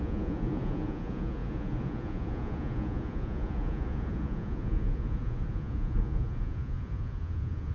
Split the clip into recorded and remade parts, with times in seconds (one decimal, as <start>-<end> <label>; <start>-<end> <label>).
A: 0.0-7.7 remade